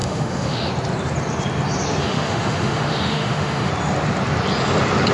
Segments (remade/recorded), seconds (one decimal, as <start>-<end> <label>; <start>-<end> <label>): 0.0-0.7 remade; 0.7-2.0 recorded; 2.0-3.7 remade; 3.7-5.1 recorded